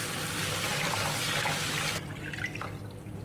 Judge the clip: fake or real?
real